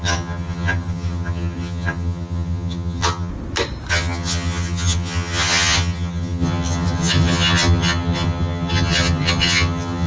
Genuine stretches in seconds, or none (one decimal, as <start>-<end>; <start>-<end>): 3.3-3.9